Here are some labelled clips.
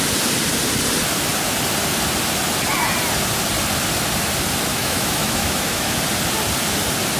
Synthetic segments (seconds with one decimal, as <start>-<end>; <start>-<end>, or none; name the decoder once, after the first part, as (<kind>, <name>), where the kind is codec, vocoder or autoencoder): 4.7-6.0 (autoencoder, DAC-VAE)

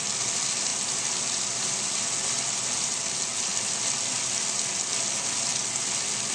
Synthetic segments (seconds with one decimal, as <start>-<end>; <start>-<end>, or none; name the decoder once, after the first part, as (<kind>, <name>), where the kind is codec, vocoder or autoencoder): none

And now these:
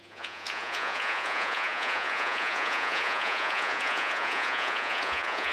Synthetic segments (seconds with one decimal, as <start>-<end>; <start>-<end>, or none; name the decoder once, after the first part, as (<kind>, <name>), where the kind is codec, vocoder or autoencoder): 0.0-5.5 (vocoder, Vocos)

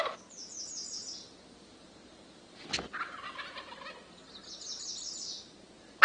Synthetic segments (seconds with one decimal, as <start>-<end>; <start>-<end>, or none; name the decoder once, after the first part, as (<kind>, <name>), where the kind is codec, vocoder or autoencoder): none

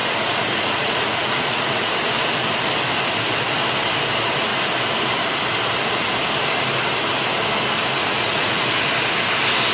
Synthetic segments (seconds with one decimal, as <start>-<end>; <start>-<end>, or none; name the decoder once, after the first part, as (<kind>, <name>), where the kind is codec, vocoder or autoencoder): 0.0-1.9 (vocoder, Vocos); 8.0-8.7

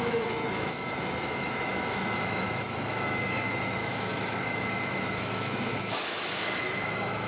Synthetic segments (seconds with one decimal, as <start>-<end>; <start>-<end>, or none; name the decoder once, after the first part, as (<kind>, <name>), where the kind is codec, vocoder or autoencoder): 0.0-7.3 (autoencoder, DAC-VAE)

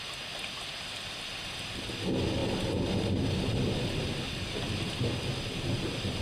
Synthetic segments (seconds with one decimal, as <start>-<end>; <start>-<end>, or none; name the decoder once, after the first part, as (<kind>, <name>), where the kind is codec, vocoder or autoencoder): none